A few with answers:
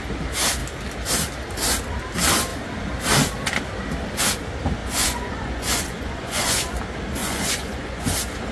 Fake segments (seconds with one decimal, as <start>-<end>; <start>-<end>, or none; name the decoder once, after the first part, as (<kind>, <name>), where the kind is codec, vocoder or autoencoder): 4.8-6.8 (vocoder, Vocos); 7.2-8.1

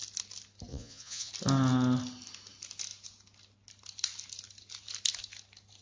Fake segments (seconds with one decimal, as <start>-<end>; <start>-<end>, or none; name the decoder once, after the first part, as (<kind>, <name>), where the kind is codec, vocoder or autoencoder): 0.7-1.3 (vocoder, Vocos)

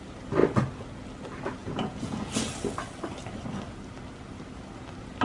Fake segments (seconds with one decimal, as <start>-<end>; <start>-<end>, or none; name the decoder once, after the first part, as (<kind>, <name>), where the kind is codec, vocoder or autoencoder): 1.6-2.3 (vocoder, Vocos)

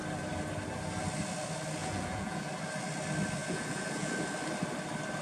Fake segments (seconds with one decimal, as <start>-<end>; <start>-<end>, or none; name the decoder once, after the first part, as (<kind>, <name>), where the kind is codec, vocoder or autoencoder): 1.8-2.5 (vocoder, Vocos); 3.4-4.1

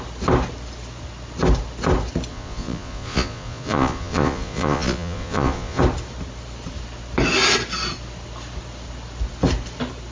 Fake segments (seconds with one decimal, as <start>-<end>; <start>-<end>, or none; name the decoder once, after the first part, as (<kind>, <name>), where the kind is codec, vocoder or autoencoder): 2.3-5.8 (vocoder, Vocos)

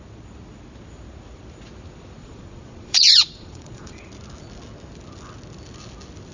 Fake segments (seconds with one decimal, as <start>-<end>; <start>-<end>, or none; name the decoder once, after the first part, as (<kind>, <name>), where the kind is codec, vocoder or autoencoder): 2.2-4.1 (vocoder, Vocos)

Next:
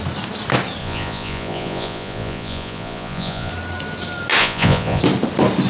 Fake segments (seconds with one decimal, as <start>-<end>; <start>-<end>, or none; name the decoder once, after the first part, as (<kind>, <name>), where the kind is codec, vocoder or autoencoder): 0.8-3.5 (vocoder, Vocos); 4.4-5.0